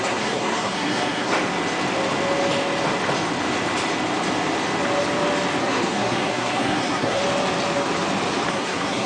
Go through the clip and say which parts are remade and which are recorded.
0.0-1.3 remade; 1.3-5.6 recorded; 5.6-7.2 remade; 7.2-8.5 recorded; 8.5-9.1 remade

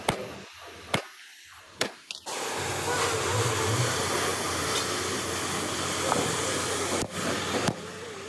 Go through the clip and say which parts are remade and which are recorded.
0.0-1.6 recorded; 1.6-2.1 remade; 2.1-8.3 recorded

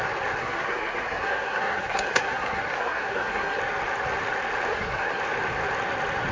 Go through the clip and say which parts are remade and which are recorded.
0.0-0.4 recorded; 0.4-3.6 remade; 3.6-4.7 recorded; 4.7-5.2 remade; 5.2-6.3 recorded

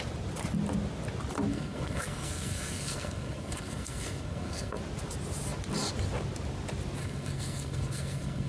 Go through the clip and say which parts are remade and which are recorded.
0.0-1.5 recorded; 1.5-4.8 remade; 4.8-7.0 recorded; 7.0-8.5 remade

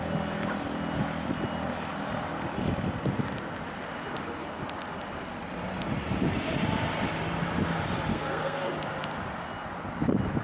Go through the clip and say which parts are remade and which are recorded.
0.0-8.1 recorded; 8.1-8.7 remade; 8.7-10.4 recorded